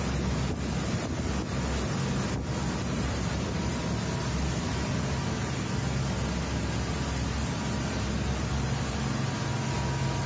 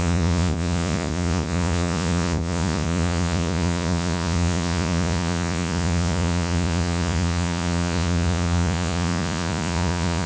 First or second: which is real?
first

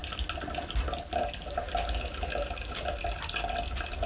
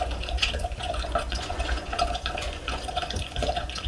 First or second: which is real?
first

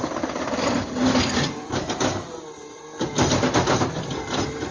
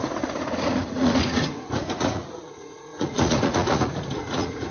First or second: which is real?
first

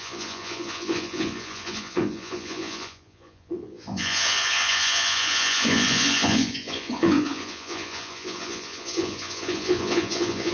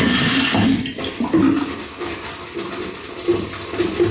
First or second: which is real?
second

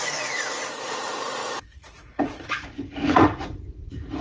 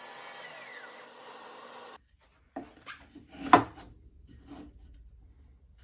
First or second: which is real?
second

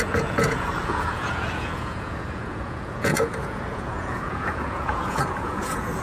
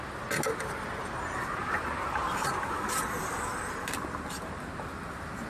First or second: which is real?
second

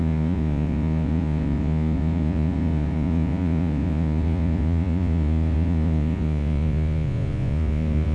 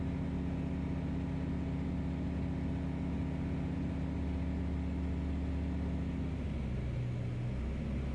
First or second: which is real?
second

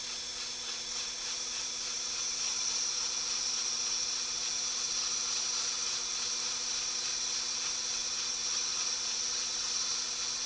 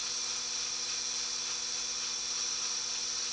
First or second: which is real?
second